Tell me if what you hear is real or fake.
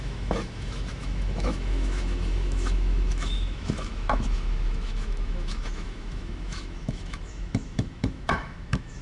fake